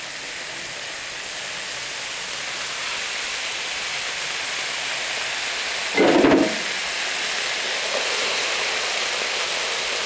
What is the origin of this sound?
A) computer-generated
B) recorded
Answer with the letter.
B